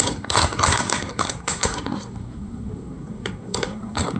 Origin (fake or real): fake